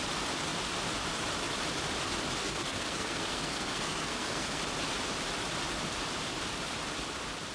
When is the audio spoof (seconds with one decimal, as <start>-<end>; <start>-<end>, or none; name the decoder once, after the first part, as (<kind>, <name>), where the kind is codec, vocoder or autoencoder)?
2.4-4.6 (codec, SNAC)